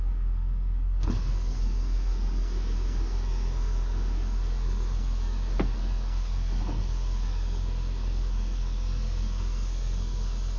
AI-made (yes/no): yes